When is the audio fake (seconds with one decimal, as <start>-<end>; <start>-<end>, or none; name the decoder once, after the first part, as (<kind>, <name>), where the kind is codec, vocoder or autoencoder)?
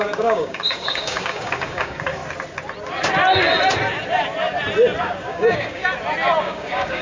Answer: 0.0-2.2 (codec, DAC); 5.0-5.8; 6.4-7.0